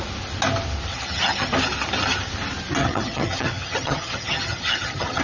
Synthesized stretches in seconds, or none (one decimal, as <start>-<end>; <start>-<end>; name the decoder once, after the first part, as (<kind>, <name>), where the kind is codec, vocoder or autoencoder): 0.9-1.5 (vocoder, HiFi-GAN); 2.8-5.2

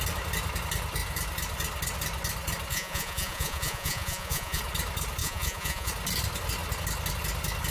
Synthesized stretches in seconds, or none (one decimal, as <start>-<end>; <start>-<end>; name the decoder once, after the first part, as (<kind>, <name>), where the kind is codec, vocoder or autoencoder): 2.7-4.6 (vocoder, Vocos); 5.2-5.9

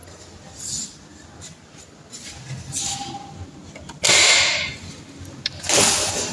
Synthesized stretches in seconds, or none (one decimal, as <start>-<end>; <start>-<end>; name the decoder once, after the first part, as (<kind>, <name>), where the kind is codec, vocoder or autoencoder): none

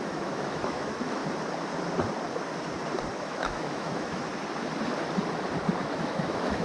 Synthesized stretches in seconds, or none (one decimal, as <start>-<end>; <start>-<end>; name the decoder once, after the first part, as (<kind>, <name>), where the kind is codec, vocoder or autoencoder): 0.0-1.2 (autoencoder, DAC-VAE); 3.2-4.3; 5.8-6.6

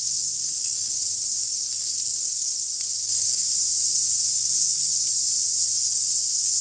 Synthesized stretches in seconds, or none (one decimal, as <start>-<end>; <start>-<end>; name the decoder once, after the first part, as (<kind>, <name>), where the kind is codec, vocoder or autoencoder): 0.0-5.0 (codec, SNAC); 5.6-6.6